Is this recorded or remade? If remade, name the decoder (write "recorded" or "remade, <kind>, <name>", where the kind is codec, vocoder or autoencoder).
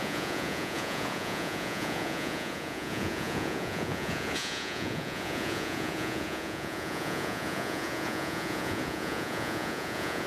remade, vocoder, Vocos